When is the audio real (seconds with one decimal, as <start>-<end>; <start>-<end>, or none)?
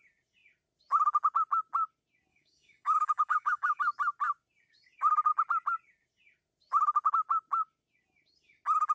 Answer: 0.0-2.3; 3.8-8.9